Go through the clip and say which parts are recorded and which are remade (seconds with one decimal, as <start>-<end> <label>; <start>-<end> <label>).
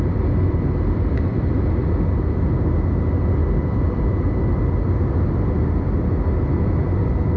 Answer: 0.0-1.3 recorded; 1.3-1.8 remade; 1.8-3.4 recorded; 3.4-5.1 remade; 5.1-7.4 recorded